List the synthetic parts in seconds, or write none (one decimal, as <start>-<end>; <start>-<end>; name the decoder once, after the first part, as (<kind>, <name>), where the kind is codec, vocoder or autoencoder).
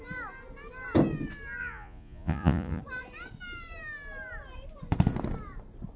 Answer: 1.6-2.8 (vocoder, Vocos)